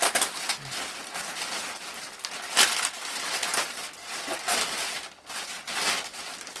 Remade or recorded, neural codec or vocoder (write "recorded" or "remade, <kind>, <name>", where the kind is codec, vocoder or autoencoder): recorded